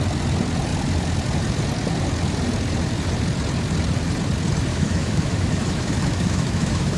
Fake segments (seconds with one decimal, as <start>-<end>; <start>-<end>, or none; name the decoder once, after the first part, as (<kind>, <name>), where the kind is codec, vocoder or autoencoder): 4.7-7.0 (autoencoder, DAC-VAE)